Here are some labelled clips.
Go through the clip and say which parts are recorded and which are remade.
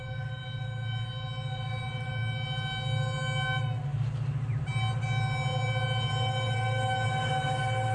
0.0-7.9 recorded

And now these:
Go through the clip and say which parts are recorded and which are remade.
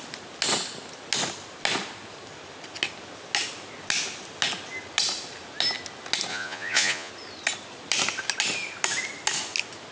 0.0-6.3 recorded; 6.3-7.1 remade; 7.1-9.9 recorded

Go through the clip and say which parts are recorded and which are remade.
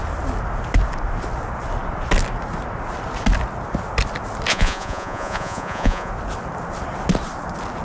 0.0-4.5 recorded; 4.5-6.1 remade; 6.1-7.8 recorded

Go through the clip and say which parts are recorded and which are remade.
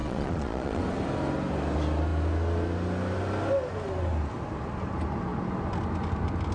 0.0-0.8 remade; 0.8-6.5 recorded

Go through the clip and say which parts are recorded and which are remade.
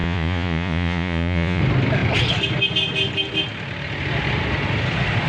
0.0-1.6 remade; 1.6-5.3 recorded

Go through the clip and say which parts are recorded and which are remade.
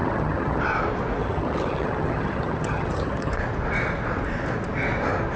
0.0-0.6 remade; 0.6-1.2 recorded; 1.2-3.3 remade; 3.3-5.4 recorded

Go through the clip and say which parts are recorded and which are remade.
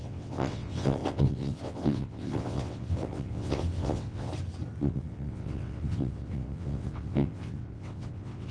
0.0-4.3 remade; 4.3-4.8 recorded; 4.8-8.5 remade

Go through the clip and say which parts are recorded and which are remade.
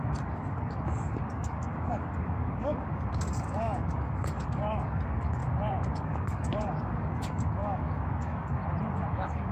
0.0-5.4 remade; 5.4-5.9 recorded; 5.9-8.6 remade; 8.6-9.1 recorded; 9.1-9.5 remade